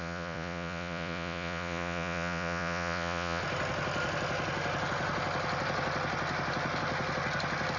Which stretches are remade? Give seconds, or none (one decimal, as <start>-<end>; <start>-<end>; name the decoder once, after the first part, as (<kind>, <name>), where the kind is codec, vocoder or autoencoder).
0.0-3.4 (vocoder, Vocos)